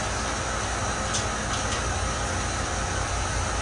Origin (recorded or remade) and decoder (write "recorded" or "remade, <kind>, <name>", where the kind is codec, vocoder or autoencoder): recorded